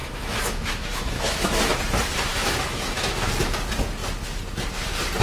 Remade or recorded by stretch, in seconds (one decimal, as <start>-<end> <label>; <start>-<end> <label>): 0.0-1.8 remade; 1.8-2.3 recorded; 2.3-3.3 remade; 3.3-5.2 recorded